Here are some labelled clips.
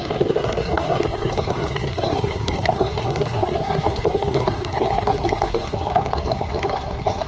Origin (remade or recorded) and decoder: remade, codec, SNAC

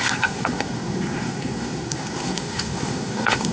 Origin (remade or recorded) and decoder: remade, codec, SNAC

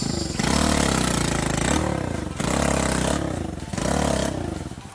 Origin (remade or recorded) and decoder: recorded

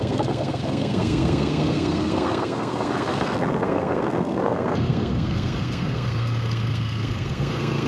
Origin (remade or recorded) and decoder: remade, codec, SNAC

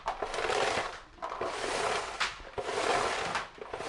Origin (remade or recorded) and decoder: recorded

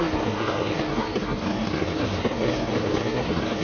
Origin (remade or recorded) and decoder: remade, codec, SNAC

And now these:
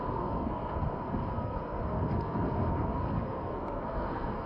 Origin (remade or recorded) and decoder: remade, codec, SNAC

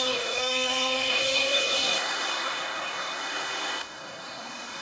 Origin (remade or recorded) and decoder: remade, codec, SNAC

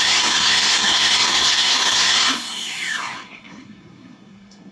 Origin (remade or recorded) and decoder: remade, codec, SNAC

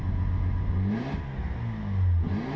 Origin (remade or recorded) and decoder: recorded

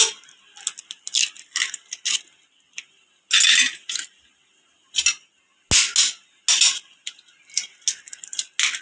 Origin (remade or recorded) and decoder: recorded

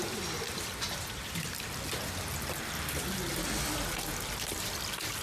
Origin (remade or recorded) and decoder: recorded